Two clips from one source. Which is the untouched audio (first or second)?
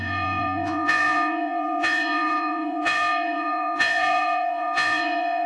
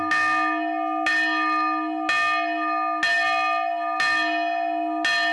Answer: second